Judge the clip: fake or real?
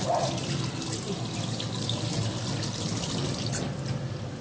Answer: real